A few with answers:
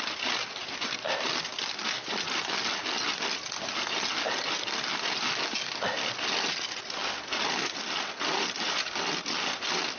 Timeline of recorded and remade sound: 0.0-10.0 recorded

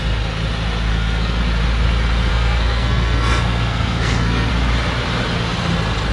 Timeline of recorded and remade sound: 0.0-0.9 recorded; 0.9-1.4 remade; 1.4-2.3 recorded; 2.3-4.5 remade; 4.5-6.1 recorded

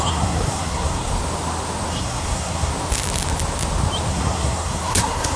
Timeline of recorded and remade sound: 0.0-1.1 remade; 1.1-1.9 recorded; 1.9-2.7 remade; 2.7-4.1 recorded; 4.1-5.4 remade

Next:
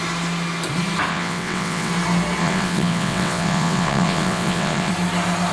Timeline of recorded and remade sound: 0.0-1.1 recorded; 1.1-1.9 remade; 1.9-2.4 recorded; 2.4-4.9 remade; 4.9-5.5 recorded

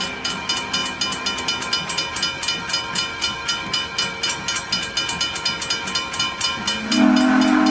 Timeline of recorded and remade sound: 0.0-7.7 recorded

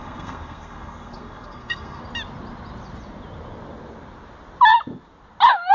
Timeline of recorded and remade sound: 0.0-2.0 remade; 2.0-5.7 recorded

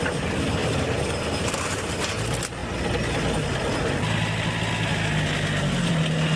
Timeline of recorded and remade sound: 0.0-6.4 recorded